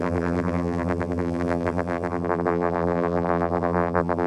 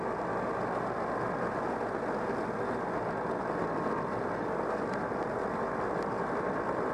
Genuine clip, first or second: second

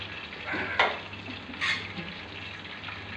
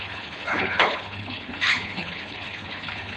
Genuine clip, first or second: first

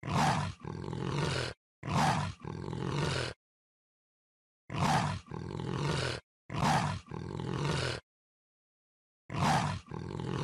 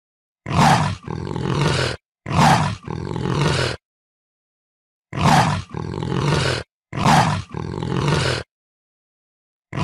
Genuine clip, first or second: first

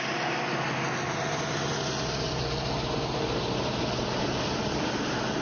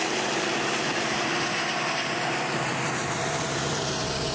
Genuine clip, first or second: first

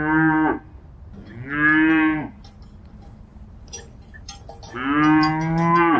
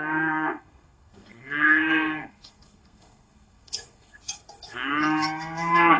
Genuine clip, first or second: first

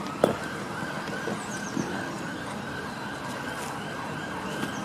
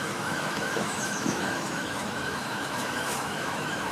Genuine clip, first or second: first